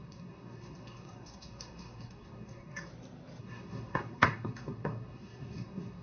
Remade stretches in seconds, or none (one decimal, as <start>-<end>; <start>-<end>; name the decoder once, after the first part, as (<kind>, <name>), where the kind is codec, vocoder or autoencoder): 0.0-2.9 (codec, SNAC); 3.4-6.0